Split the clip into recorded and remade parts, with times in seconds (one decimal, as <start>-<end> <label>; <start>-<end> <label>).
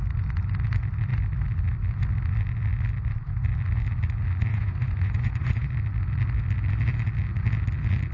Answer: 0.0-4.5 recorded; 4.5-5.7 remade; 5.7-8.1 recorded